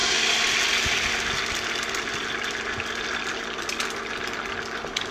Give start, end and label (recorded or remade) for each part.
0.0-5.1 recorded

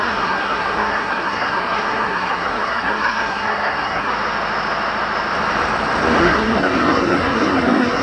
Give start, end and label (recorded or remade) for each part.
0.0-4.1 remade; 4.1-6.2 recorded; 6.2-8.0 remade

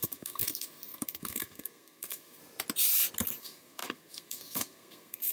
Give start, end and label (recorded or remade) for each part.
0.0-2.4 remade; 2.4-3.4 recorded; 3.4-5.3 remade

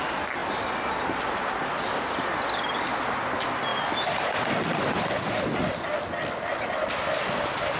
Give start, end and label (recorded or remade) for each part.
0.0-7.8 recorded

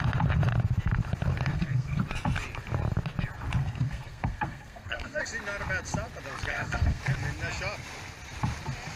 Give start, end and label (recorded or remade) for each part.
0.0-1.5 recorded; 1.5-2.0 remade; 2.0-3.6 recorded; 3.6-5.2 remade; 5.2-6.5 recorded; 6.5-7.0 remade; 7.0-9.0 recorded